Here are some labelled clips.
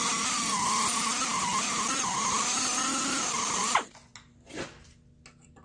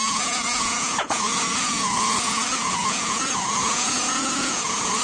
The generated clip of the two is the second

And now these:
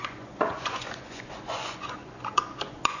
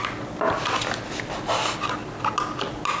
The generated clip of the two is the first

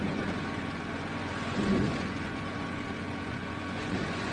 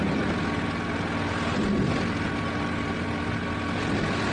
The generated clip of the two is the first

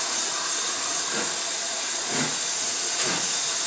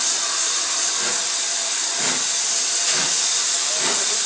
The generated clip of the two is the first